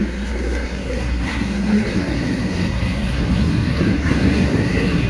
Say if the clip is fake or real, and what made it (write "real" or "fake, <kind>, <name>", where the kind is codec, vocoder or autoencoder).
fake, codec, SNAC